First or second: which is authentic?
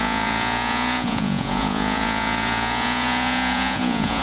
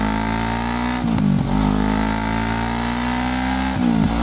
second